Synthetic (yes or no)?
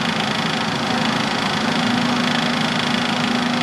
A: no